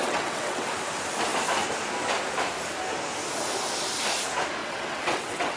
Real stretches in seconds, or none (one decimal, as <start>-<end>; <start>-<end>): 0.7-4.6